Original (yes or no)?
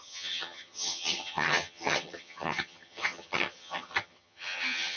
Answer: no